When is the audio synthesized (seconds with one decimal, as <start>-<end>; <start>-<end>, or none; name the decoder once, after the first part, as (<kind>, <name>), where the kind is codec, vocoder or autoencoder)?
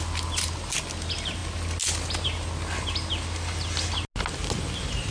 none